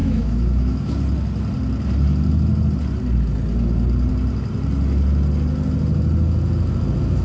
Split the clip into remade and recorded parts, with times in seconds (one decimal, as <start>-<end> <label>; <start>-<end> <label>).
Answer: 0.0-0.9 remade; 0.9-7.2 recorded